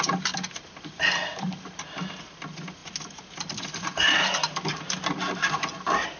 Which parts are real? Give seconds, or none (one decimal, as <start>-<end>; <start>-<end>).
0.0-6.2